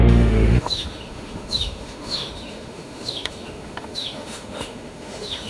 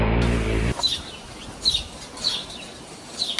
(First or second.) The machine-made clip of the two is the first